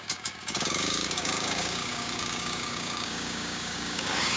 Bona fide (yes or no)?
no